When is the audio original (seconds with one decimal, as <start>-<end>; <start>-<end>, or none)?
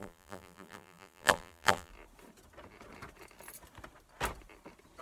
1.9-5.0